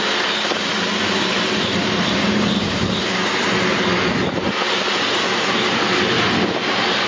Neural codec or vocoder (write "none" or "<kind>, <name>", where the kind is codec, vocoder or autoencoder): none